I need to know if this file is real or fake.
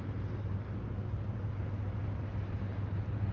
real